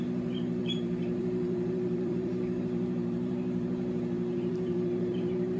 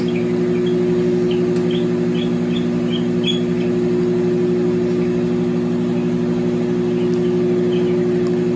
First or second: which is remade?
first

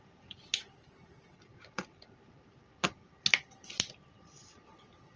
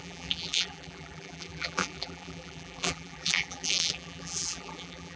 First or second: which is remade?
second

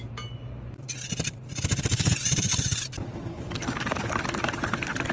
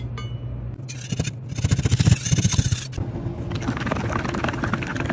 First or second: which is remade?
first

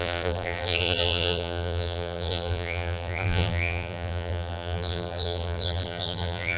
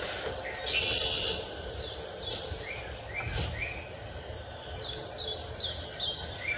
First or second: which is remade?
first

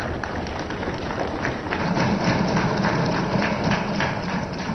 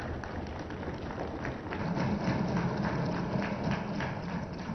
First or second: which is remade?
first